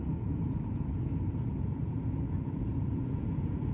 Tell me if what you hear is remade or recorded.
remade